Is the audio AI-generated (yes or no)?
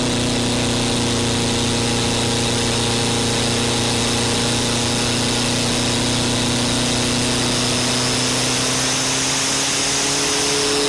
no